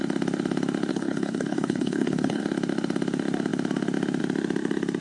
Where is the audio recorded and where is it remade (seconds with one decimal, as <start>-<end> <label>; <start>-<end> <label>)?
0.0-0.9 recorded; 0.9-2.4 remade; 2.4-5.0 recorded